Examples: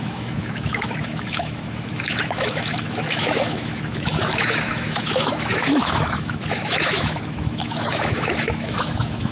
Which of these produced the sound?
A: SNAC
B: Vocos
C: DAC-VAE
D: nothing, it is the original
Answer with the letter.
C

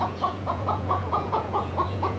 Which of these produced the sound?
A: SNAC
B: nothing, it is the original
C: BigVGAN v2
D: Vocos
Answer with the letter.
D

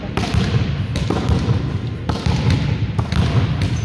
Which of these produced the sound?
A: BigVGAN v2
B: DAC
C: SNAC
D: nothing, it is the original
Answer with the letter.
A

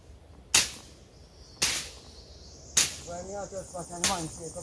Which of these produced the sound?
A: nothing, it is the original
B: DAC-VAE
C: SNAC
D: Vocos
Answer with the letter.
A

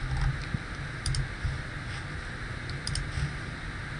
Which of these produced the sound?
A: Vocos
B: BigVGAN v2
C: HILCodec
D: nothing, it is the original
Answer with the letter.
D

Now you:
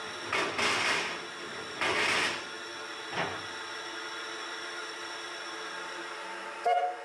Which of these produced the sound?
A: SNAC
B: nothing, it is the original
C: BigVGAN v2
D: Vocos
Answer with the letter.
B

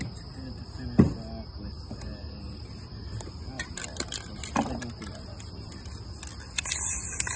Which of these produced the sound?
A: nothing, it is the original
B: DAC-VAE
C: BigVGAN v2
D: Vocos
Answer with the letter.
A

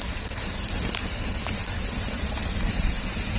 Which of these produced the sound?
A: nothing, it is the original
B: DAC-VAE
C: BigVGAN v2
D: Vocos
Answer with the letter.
C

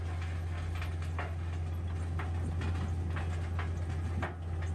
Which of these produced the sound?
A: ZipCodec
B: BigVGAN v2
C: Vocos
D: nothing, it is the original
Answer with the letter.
D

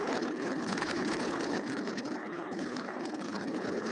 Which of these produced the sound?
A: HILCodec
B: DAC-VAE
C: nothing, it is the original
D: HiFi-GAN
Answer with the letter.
A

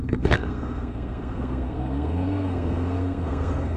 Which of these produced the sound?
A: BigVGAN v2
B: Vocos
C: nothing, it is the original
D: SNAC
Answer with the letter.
D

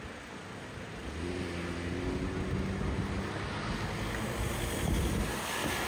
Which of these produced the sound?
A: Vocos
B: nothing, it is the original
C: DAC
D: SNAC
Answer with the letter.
B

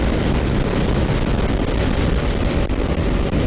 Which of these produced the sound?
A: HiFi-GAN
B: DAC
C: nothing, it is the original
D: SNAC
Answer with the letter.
C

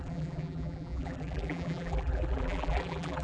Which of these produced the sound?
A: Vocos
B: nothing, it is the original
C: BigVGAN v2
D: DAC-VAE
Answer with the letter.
C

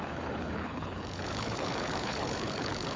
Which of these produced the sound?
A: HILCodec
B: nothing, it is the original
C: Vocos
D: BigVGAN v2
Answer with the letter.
A